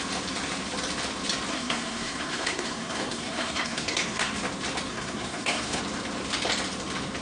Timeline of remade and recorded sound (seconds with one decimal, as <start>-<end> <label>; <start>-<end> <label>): 0.0-1.5 recorded; 1.5-4.3 remade; 4.3-4.9 recorded; 4.9-5.8 remade; 5.8-7.2 recorded